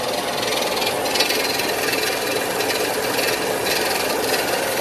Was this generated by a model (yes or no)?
no